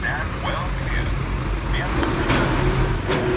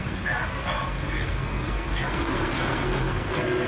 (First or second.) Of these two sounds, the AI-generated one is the second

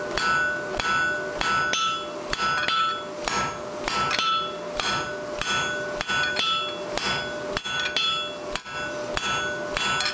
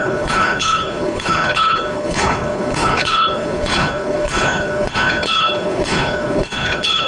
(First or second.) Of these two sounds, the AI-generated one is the second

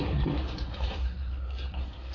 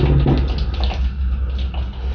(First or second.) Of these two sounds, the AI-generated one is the first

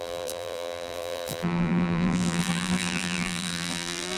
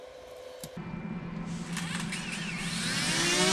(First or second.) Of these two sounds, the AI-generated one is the first